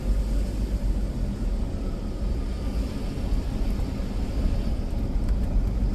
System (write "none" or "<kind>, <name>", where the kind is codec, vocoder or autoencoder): none